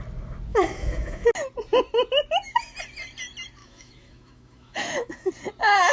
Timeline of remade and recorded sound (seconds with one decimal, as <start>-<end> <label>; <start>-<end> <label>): 0.0-0.5 recorded; 0.5-1.3 remade; 1.3-3.6 recorded; 3.6-5.3 remade; 5.3-5.9 recorded